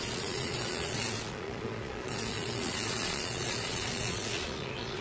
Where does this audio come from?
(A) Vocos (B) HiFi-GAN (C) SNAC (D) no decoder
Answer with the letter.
A